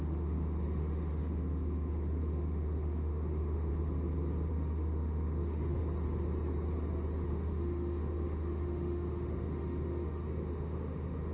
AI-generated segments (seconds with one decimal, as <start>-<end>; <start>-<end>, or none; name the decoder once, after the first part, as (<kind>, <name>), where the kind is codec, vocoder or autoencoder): 0.0-3.7 (autoencoder, DAC-VAE); 4.5-5.8; 7.3-11.3